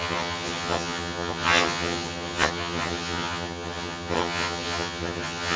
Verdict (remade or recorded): remade